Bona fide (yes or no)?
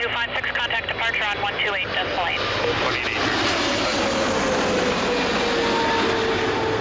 yes